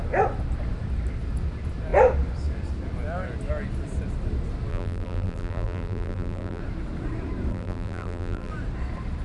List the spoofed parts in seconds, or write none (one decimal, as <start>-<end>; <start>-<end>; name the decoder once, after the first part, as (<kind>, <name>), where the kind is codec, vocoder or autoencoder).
4.7-6.6 (vocoder, BigVGAN v2); 7.5-8.5